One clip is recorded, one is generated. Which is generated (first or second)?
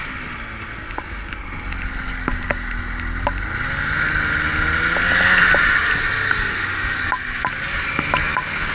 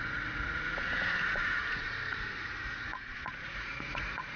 second